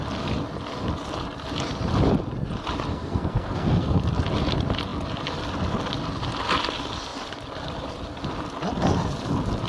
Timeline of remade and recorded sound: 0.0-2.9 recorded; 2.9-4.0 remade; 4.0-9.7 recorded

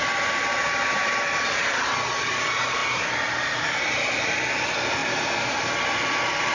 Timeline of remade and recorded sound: 0.0-6.5 recorded

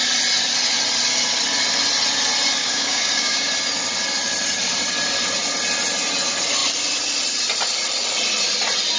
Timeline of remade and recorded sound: 0.0-2.6 recorded; 2.6-3.5 remade; 3.5-9.0 recorded

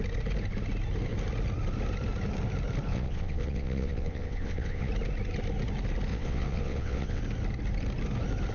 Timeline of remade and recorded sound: 0.0-2.9 recorded; 2.9-4.9 remade; 4.9-6.1 recorded; 6.1-7.2 remade; 7.2-8.5 recorded

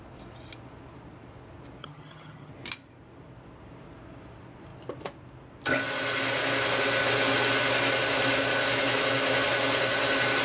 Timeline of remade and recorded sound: 0.0-1.8 recorded; 1.8-2.5 remade; 2.5-10.4 recorded